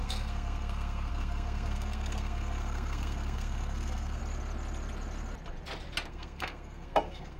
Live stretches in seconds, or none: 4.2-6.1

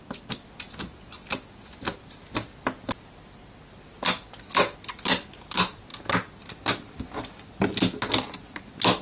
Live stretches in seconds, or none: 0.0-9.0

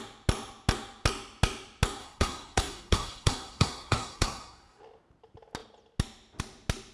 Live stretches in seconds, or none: 0.0-2.0; 4.8-6.9

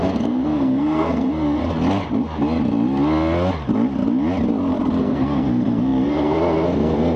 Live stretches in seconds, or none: 1.6-5.0

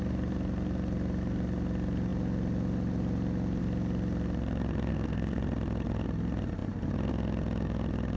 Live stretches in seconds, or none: 0.0-4.9; 5.4-8.2

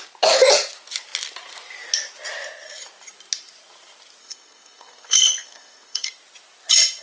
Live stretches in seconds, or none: 0.0-4.2; 6.1-7.0

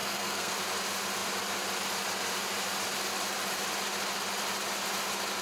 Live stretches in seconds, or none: 0.5-5.4

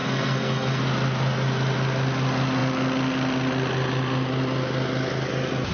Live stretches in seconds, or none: 0.8-5.7